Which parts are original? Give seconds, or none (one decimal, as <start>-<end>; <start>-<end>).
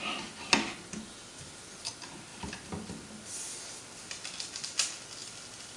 0.0-5.8